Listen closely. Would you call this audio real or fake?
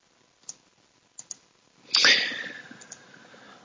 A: real